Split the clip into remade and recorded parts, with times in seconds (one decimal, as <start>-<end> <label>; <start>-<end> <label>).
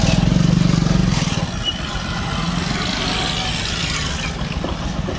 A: 0.0-5.2 recorded